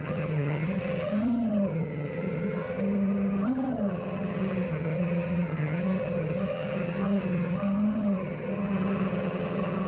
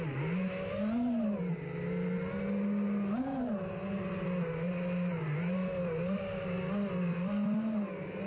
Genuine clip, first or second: second